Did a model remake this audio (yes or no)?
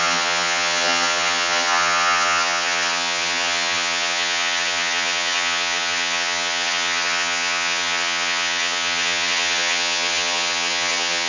yes